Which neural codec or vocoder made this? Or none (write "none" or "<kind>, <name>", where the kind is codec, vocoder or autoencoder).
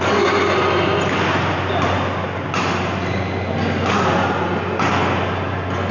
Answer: none